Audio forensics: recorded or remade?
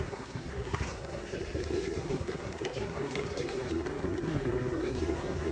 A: remade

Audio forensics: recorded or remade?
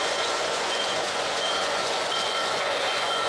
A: remade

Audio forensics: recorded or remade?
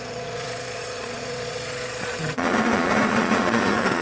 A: remade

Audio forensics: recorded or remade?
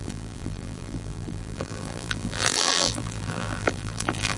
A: remade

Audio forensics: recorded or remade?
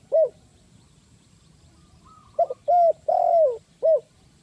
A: recorded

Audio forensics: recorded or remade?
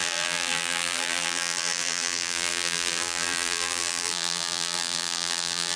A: remade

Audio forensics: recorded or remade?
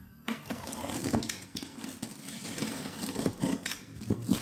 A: remade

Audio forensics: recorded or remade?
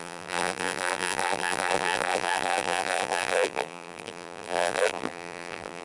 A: remade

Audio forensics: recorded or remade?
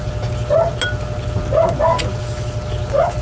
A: recorded